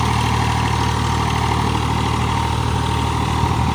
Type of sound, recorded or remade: recorded